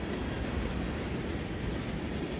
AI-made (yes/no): no